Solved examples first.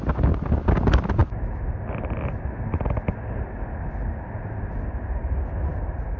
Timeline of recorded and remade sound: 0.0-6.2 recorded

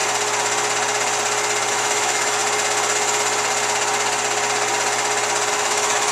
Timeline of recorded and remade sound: 0.0-1.7 recorded; 1.7-2.4 remade; 2.4-5.5 recorded; 5.5-6.1 remade

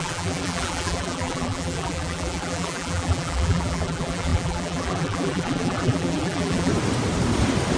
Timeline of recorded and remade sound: 0.0-6.7 remade; 6.7-7.8 recorded